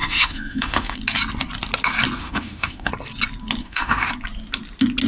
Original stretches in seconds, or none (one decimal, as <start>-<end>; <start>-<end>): 1.0-2.2; 2.9-3.6; 4.1-5.1